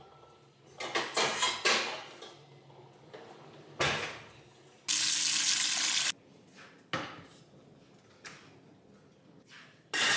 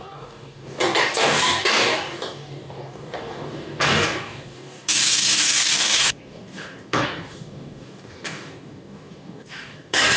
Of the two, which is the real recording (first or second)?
first